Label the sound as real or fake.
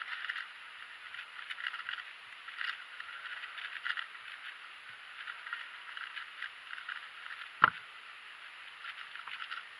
real